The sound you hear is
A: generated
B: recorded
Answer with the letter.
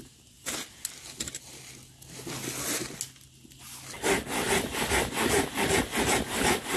B